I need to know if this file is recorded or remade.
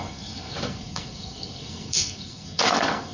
remade